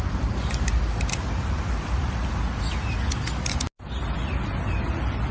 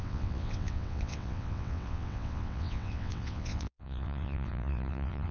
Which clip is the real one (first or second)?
first